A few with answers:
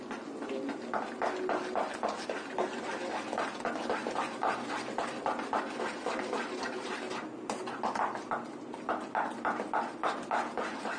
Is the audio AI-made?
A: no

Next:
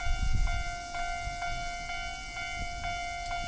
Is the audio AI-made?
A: no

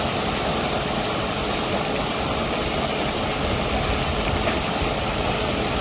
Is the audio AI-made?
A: no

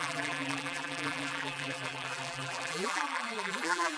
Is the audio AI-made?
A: yes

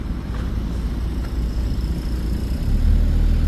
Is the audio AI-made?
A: no